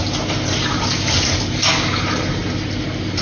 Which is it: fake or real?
real